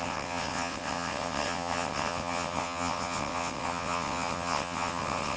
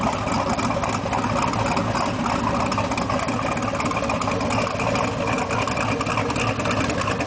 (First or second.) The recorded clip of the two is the second